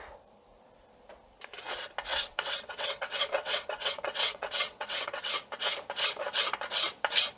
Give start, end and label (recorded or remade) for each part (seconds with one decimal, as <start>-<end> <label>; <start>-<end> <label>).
0.0-2.1 recorded; 2.1-5.3 remade; 5.3-7.4 recorded